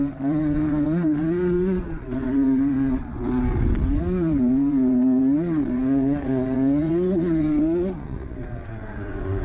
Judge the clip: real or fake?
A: fake